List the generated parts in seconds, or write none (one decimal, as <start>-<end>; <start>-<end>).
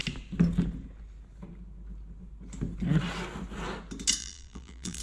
4.2-5.0